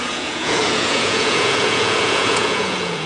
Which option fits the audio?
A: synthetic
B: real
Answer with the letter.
A